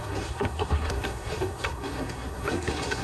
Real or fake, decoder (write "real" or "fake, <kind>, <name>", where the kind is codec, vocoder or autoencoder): fake, codec, SNAC